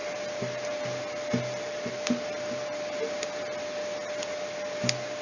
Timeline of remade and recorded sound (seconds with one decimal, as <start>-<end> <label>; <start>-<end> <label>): 0.0-5.2 recorded